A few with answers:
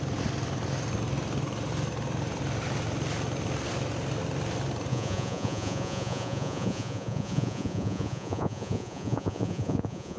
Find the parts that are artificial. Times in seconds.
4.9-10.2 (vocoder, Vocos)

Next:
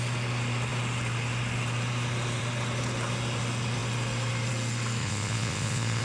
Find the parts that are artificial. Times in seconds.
5.0-6.0 (vocoder, Vocos)

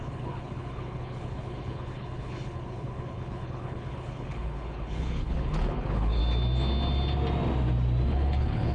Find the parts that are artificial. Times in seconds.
0.0-6.2 (codec, HILCodec); 8.1-8.7

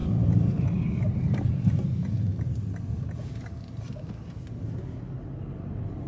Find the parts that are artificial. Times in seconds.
0.0-1.5 (vocoder, BigVGAN v2)